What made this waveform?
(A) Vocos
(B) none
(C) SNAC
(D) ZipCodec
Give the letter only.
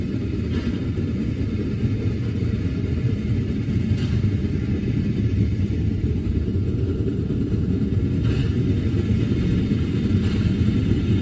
B